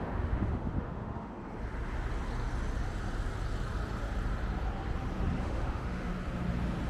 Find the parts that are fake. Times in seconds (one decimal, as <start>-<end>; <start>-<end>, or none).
0.0-1.3; 5.4-6.1